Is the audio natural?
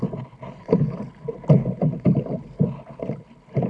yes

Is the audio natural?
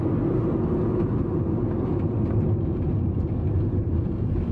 yes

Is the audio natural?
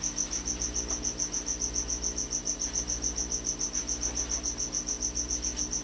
yes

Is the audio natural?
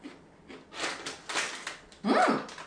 yes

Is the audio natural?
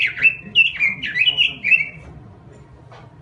yes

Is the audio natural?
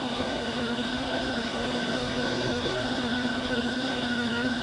no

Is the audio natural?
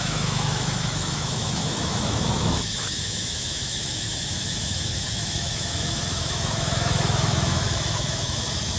no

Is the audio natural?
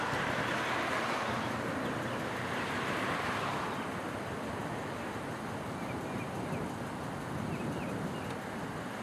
yes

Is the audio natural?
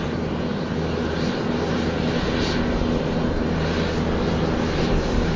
yes